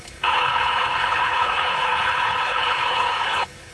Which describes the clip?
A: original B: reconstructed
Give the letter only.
B